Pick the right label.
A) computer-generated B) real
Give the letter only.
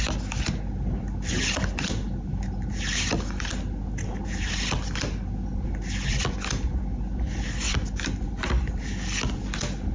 B